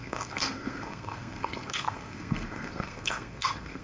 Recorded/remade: remade